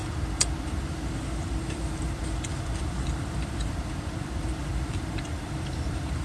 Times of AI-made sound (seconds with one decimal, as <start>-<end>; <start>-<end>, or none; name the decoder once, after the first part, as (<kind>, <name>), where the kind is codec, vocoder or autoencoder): 0.0-6.2 (vocoder, BigVGAN v2)